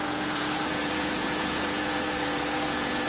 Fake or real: fake